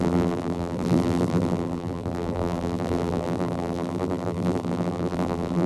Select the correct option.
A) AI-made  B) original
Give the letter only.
A